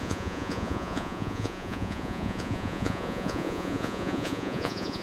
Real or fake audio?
fake